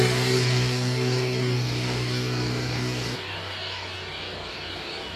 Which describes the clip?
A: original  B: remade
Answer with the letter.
B